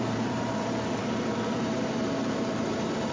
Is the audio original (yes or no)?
no